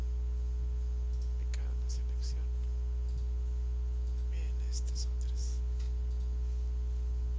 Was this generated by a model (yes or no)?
no